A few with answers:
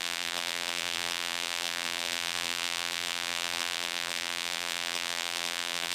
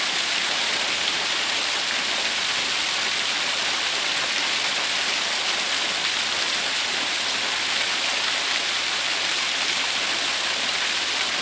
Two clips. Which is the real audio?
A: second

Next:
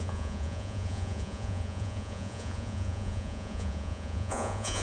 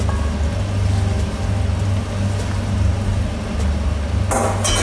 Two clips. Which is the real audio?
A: second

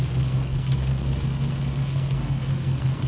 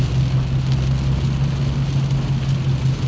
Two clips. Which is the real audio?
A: second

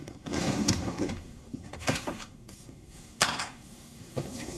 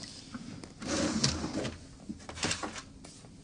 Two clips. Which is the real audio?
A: second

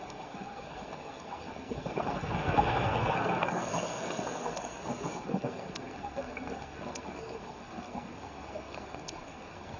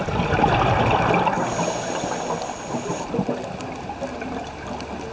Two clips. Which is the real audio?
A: second